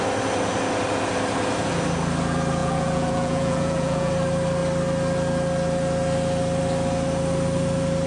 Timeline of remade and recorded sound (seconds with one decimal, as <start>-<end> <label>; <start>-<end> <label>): 0.0-2.6 recorded; 2.6-4.1 remade; 4.1-8.1 recorded

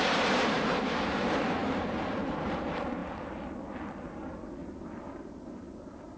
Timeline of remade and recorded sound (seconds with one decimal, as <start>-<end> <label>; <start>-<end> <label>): 0.0-3.0 remade; 3.0-4.1 recorded; 4.1-4.6 remade; 4.6-5.1 recorded; 5.1-6.2 remade

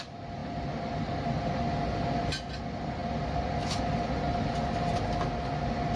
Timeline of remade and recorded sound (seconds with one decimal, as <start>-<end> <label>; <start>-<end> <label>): 0.0-6.0 recorded

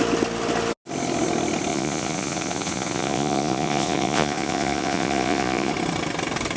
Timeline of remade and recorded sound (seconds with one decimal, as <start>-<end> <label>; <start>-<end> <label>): 0.0-1.7 recorded; 1.7-5.7 remade; 5.7-6.6 recorded

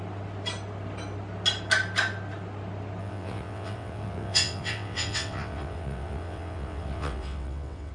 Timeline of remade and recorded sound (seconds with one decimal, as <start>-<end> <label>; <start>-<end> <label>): 0.0-3.0 recorded; 3.0-7.9 remade

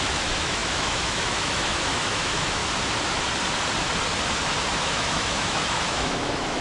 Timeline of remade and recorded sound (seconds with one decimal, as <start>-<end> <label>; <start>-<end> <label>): 0.0-2.6 remade; 2.6-4.7 recorded; 4.7-6.6 remade

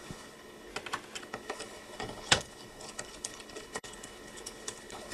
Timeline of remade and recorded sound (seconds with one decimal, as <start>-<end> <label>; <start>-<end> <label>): 0.0-0.7 remade; 0.7-1.2 recorded; 1.2-5.1 remade